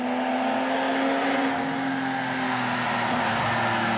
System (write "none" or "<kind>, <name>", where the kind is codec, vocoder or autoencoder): none